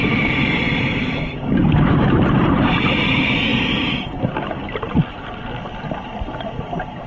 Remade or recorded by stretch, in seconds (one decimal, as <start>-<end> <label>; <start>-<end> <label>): 0.0-3.5 remade; 3.5-7.1 recorded